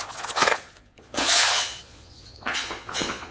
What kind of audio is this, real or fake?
fake